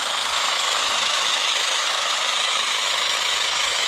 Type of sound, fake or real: fake